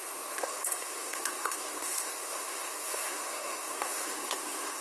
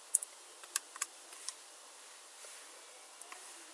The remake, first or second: first